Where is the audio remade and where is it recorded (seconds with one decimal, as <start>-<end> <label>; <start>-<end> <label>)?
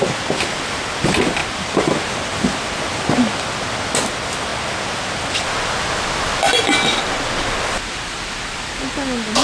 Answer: 0.0-9.4 recorded